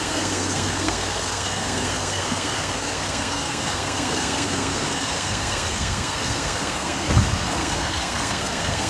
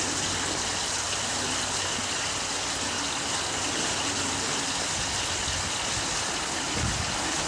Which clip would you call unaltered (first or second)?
second